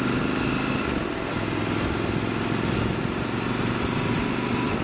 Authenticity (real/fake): real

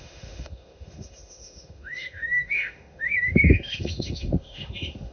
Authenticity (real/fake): fake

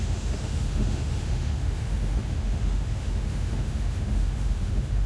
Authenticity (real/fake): fake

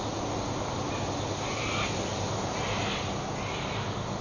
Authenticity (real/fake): real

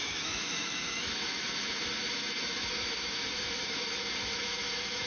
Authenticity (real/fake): fake